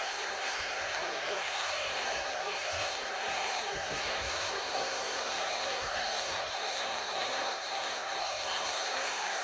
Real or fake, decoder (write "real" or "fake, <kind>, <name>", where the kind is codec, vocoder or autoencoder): fake, codec, SNAC